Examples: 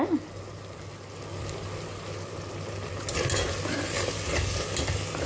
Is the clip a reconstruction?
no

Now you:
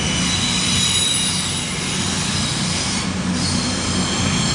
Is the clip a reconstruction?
no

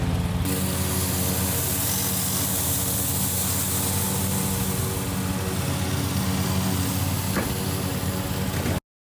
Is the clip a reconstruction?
no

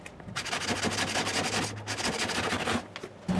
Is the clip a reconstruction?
no